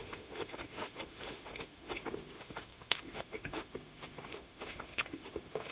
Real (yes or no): no